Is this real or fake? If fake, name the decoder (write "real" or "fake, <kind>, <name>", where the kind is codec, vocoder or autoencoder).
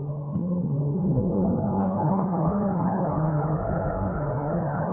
fake, codec, SNAC